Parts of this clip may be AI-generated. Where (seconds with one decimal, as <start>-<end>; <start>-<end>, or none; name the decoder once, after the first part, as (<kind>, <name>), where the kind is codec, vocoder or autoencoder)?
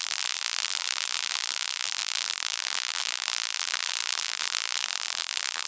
0.0-5.7 (vocoder, BigVGAN v2)